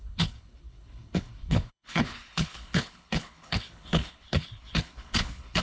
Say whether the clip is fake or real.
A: fake